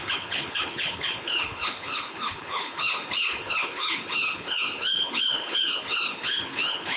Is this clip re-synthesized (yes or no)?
yes